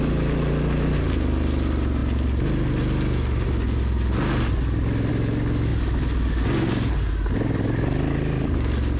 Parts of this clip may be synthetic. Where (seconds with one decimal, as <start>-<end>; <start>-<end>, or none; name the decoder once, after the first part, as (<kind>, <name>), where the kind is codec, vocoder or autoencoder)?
none

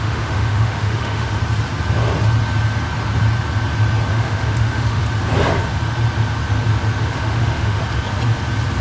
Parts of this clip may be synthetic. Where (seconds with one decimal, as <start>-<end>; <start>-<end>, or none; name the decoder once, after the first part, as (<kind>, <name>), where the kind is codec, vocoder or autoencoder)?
0.0-1.4 (autoencoder, DAC-VAE); 4.1-5.0; 7.0-7.8

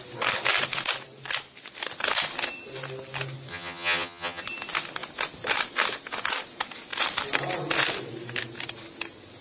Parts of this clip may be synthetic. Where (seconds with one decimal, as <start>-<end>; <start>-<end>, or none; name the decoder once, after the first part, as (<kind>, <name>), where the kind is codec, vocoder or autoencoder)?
3.5-4.4 (vocoder, HiFi-GAN)

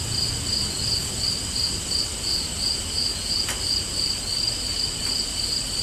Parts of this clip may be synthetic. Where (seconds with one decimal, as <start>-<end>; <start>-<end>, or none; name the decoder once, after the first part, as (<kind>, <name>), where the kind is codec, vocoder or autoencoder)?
none

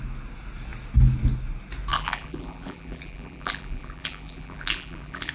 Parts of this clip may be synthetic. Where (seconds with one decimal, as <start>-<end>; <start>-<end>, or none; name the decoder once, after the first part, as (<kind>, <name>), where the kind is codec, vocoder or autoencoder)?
1.9-5.3 (vocoder, BigVGAN v2)

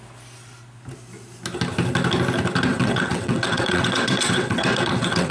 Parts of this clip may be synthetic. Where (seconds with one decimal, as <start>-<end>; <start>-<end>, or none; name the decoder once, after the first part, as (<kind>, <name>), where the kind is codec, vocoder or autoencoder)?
2.7-5.3 (vocoder, WaveNeXt)

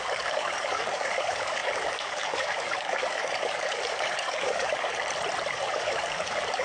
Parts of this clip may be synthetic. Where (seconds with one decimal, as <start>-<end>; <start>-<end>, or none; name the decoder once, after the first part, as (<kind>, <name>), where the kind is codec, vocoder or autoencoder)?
0.0-4.9 (codec, DAC); 5.5-6.6